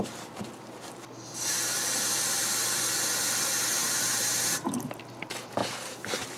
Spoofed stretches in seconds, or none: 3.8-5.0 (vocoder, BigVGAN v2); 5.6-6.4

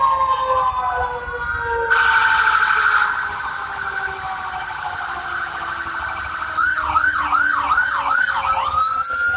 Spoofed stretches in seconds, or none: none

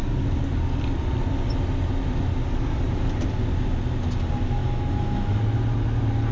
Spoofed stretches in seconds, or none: 4.6-5.4 (autoencoder, DAC-VAE)

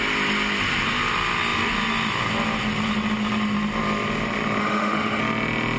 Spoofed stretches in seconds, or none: 4.6-5.2 (autoencoder, DAC-VAE)

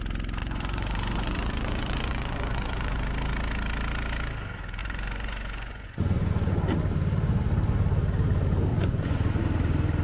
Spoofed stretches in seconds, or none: 0.4-3.1 (vocoder, Vocos); 4.8-6.3; 8.7-9.4

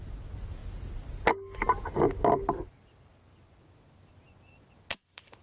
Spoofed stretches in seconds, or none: none

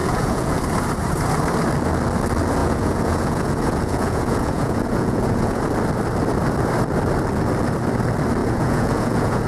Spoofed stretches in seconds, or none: 0.0-0.6 (vocoder, Vocos); 2.6-5.6; 8.4-9.5

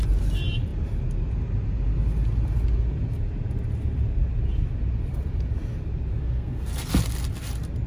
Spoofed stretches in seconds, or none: 6.1-6.7 (codec, SNAC)